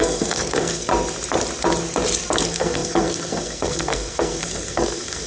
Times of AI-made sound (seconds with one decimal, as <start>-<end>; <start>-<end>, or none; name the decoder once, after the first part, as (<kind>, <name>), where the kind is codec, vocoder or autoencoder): 0.0-0.9 (codec, SNAC); 2.4-5.3